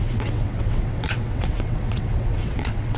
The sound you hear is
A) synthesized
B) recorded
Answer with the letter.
A